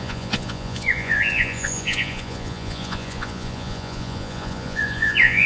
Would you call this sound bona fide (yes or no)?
no